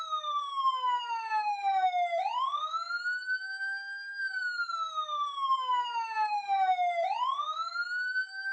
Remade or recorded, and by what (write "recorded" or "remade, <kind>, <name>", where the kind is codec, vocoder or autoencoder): remade, autoencoder, DAC-VAE